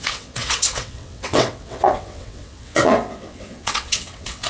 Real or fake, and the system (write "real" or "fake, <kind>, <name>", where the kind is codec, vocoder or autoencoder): fake, vocoder, WaveNeXt